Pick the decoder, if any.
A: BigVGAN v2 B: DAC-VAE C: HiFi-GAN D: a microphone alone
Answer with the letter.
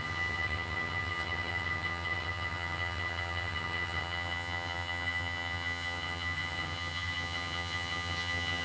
C